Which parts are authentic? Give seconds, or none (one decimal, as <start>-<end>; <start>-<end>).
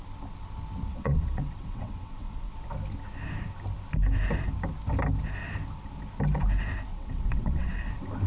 0.0-0.9; 2.5-6.9; 7.9-8.3